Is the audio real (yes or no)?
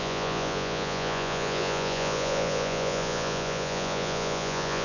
no